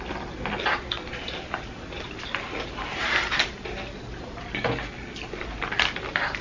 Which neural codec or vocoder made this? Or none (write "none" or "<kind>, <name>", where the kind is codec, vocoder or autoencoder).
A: none